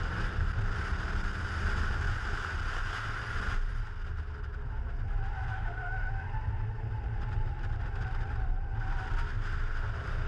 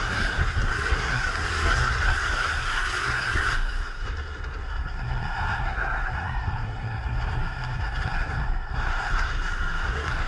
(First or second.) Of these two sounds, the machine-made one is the second